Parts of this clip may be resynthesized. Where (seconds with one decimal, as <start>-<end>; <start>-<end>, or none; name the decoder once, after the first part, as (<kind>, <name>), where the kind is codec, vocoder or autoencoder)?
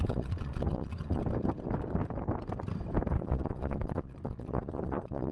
0.0-1.2 (vocoder, Vocos); 3.1-5.3